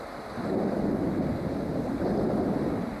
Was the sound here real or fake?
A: real